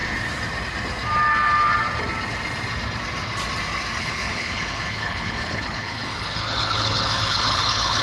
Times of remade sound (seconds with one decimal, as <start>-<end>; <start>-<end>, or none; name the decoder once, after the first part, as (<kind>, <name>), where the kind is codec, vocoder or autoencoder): 4.0-8.0 (codec, HILCodec)